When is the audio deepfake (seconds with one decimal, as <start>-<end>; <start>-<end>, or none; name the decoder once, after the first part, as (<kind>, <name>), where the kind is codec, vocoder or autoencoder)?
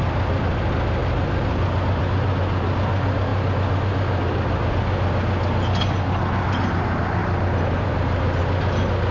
1.0-2.0 (vocoder, BigVGAN v2); 7.2-8.4